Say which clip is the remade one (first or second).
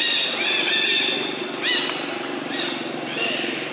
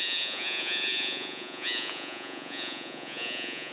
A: second